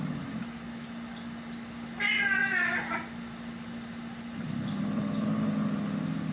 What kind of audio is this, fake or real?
real